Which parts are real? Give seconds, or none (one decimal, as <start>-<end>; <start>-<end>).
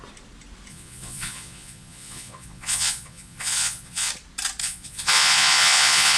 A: 0.0-0.7; 4.1-4.6